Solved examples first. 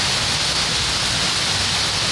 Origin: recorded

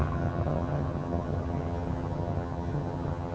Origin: remade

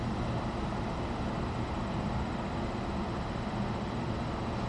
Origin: recorded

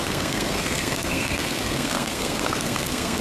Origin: remade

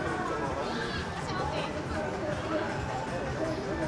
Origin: remade